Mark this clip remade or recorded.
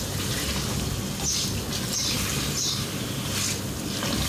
recorded